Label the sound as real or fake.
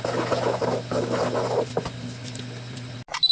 real